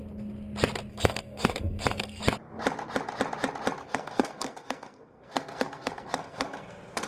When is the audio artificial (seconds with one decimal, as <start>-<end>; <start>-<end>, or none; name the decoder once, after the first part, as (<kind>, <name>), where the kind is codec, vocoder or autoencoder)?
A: 0.9-2.2 (codec, SNAC); 3.8-7.1